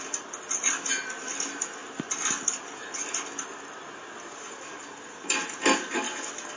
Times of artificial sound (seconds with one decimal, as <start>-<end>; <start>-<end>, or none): none